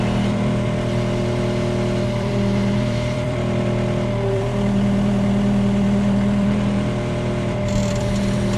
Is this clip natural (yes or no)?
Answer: no